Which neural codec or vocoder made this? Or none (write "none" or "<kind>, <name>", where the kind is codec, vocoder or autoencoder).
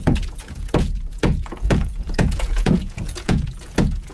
vocoder, Vocos